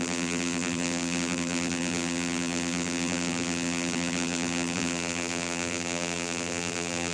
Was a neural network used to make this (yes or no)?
yes